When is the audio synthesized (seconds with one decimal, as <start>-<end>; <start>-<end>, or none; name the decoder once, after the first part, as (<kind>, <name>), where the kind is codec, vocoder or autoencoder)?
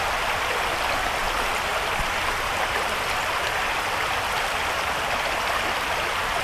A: 1.7-4.7 (vocoder, BigVGAN v2)